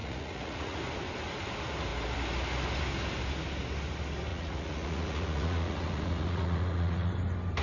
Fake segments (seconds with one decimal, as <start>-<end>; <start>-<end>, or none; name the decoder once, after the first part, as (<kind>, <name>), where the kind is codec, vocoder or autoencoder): 0.0-0.8 (vocoder, Vocos); 4.3-7.1